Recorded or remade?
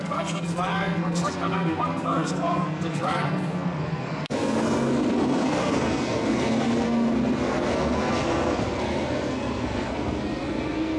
remade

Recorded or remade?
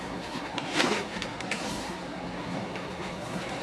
remade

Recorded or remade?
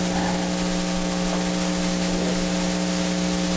recorded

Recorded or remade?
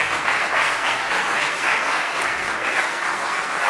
remade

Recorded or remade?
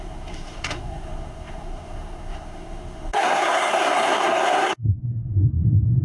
remade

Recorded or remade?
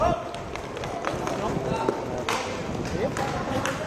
recorded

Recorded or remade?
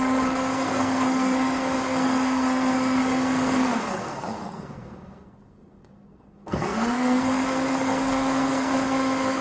remade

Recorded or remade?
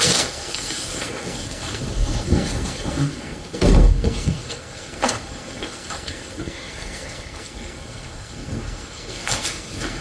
remade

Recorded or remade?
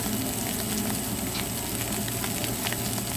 recorded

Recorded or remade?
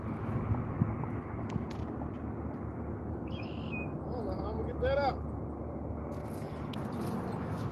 recorded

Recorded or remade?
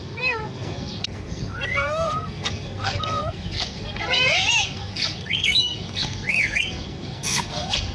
remade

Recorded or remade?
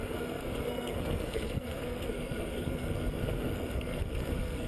remade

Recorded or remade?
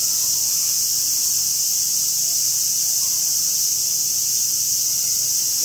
recorded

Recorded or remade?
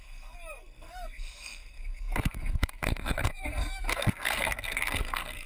remade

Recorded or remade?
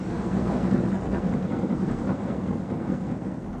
remade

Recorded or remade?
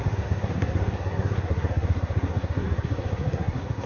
remade